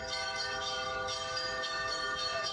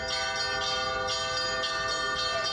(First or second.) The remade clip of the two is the first